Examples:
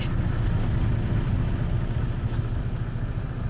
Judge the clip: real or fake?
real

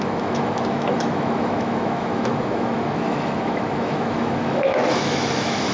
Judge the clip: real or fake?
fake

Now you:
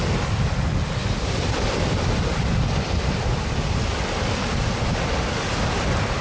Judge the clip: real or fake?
real